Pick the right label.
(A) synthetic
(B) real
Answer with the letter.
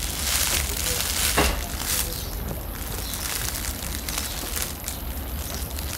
B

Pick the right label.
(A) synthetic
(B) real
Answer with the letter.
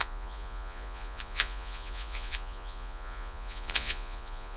A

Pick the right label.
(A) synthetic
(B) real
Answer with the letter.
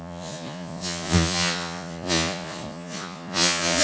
A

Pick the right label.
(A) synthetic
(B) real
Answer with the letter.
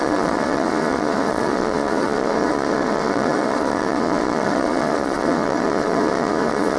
A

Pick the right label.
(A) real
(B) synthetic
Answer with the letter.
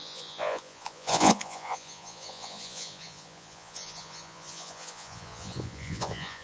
B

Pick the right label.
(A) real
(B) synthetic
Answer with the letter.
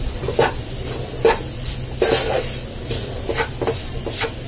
A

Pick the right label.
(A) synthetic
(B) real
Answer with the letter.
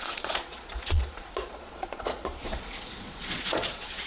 A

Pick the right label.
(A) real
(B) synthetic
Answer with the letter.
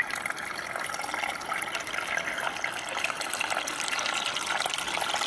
A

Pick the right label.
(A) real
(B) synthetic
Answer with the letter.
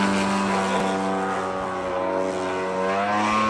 A